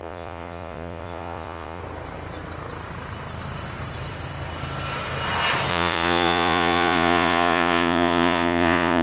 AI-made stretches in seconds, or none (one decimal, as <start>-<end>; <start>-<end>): 0.0-1.8; 5.7-9.0